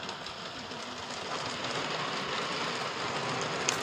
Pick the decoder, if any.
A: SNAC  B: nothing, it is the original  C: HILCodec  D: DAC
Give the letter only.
B